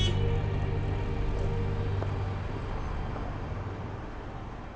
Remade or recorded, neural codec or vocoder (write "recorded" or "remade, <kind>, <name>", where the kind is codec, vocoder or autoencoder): recorded